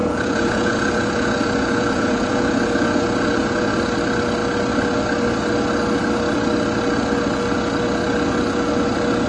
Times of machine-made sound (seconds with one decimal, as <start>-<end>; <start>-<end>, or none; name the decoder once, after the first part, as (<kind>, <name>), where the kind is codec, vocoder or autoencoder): 0.0-3.7 (vocoder, Vocos)